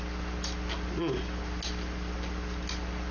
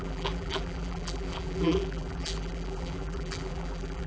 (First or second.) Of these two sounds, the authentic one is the first